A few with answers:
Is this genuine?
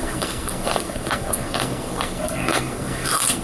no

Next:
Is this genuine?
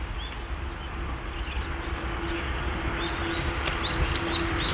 yes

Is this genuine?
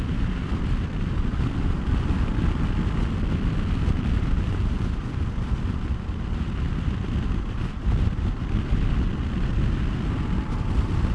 yes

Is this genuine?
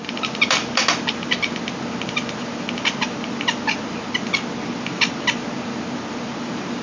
yes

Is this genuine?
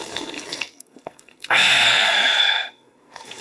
no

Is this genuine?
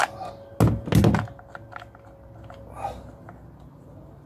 yes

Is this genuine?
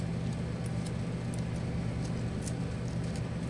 yes